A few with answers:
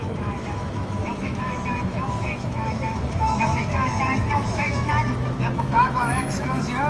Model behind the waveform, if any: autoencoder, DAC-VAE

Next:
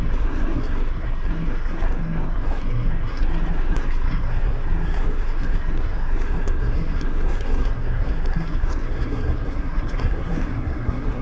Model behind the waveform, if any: codec, SNAC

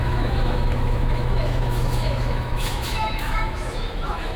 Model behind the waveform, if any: autoencoder, DAC-VAE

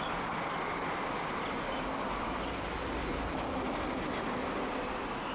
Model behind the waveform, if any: none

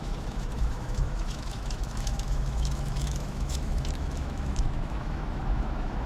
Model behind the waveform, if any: autoencoder, DAC-VAE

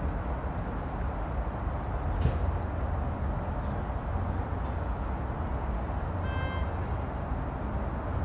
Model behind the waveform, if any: none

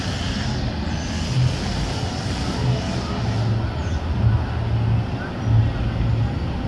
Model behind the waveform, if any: none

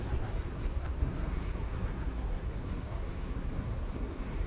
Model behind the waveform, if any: codec, SNAC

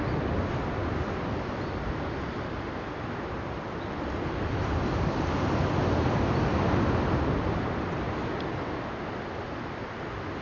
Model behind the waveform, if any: none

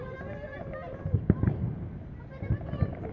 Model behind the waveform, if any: none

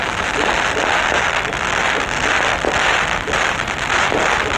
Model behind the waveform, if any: none